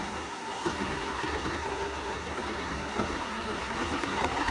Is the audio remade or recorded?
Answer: remade